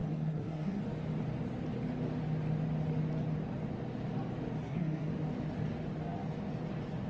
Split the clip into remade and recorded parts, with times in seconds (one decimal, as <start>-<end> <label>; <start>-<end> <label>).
0.0-0.8 remade; 0.8-4.6 recorded; 4.6-5.1 remade; 5.1-7.1 recorded